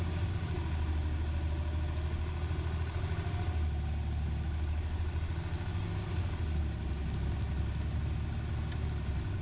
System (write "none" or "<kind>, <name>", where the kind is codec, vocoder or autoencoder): none